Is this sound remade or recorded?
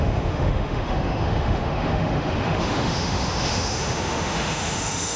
remade